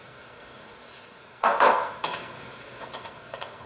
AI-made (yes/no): yes